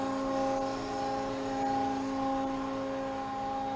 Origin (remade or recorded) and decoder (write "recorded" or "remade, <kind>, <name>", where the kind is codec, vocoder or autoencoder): recorded